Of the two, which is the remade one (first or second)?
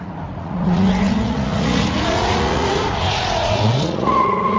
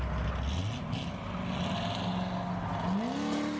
first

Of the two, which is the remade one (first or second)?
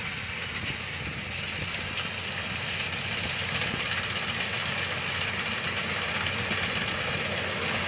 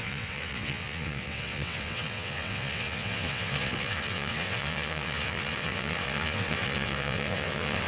second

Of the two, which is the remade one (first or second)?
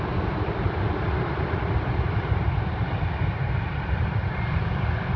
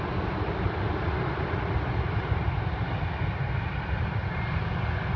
first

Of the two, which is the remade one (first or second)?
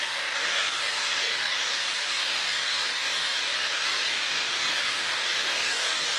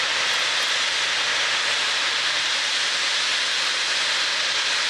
first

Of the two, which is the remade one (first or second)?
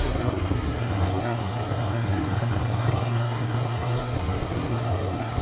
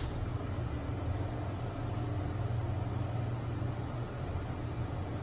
first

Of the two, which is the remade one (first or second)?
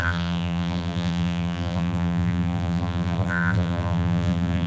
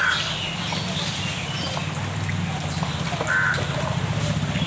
first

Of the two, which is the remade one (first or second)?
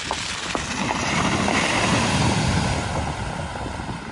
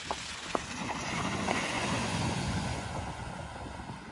second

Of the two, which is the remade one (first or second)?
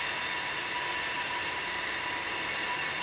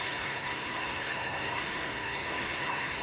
second